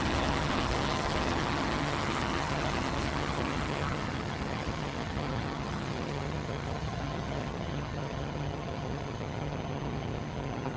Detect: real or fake fake